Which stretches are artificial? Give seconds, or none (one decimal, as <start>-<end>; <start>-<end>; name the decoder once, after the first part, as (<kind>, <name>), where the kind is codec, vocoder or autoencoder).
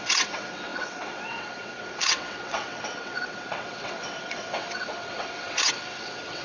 0.0-6.4 (vocoder, WaveNeXt)